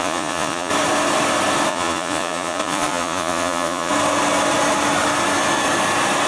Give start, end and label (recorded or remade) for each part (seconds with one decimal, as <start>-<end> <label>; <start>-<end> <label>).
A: 0.0-0.7 remade; 0.7-1.7 recorded; 1.7-3.9 remade; 3.9-6.3 recorded

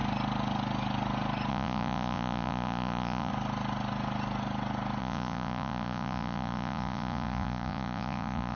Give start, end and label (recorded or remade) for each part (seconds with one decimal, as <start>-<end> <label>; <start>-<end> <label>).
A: 0.0-1.5 recorded; 1.5-3.3 remade; 3.3-5.0 recorded; 5.0-8.6 remade